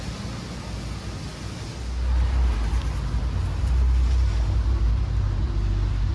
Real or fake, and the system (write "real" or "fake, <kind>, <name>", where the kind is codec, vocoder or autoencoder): real